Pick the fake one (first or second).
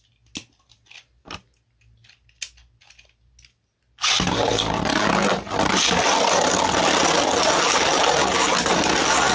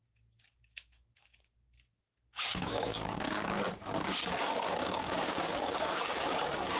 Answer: second